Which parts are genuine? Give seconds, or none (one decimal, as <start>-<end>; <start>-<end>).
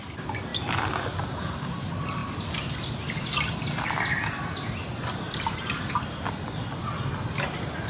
0.0-7.9